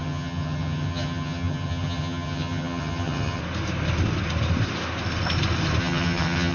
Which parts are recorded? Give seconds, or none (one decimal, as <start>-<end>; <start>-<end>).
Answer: 3.4-5.8